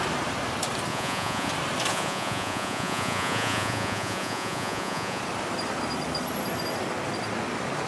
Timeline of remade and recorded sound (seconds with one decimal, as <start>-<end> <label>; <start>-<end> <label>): 0.0-0.9 recorded; 0.9-1.5 remade; 1.5-1.9 recorded; 1.9-5.2 remade; 5.2-7.9 recorded

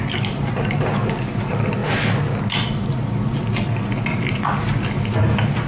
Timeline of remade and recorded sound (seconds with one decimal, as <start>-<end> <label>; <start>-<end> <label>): 0.0-5.7 recorded